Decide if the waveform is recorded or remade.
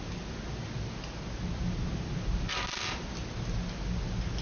recorded